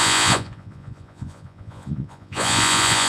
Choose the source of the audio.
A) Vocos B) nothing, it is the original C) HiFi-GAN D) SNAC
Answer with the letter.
A